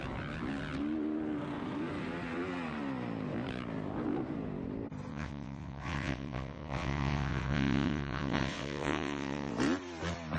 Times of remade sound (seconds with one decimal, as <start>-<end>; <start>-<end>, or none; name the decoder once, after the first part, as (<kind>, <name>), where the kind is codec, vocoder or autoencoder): 5.1-9.5 (vocoder, WaveNeXt)